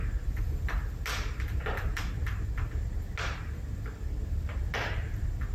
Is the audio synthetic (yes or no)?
no